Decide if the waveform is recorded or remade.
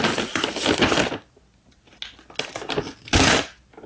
recorded